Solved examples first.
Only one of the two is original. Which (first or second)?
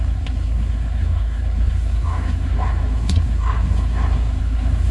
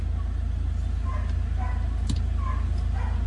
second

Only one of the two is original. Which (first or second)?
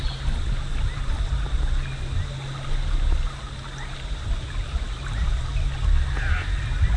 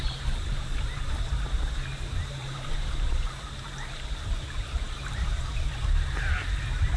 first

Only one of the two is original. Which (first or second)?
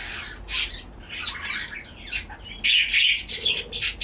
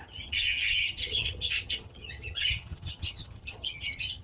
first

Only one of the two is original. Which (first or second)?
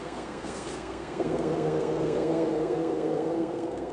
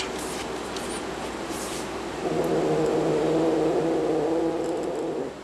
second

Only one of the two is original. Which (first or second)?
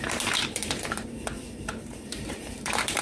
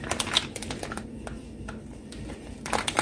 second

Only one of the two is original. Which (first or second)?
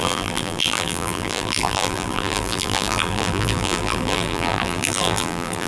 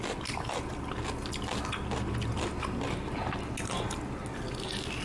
second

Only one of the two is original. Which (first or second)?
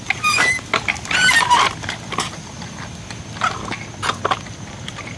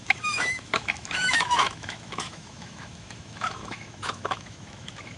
first